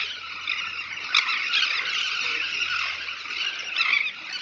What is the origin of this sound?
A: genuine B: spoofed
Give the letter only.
A